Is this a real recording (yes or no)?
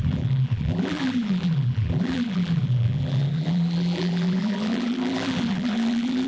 no